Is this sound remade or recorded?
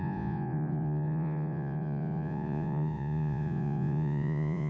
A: remade